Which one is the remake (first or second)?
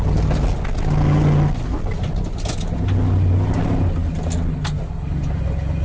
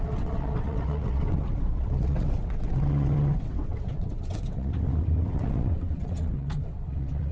second